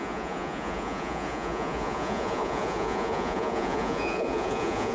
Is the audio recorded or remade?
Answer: remade